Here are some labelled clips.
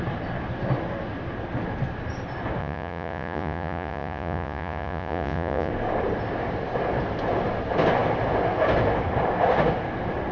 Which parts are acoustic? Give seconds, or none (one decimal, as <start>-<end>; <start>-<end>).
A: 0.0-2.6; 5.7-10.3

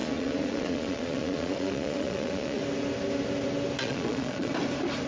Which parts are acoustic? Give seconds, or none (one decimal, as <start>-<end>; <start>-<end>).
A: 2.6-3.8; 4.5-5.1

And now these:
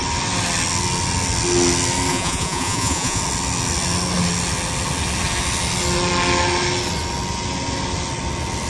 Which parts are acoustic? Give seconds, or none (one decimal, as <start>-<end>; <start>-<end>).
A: 0.0-2.1; 3.2-8.7

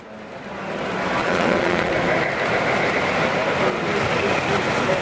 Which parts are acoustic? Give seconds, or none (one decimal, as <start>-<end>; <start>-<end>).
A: 0.0-1.2; 1.9-5.0

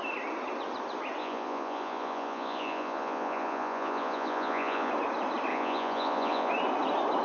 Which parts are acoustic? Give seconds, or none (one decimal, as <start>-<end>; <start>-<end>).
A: 0.0-1.2; 4.9-5.5; 6.5-7.2

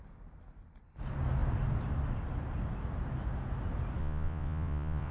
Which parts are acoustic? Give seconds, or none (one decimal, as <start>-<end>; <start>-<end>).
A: 0.0-4.0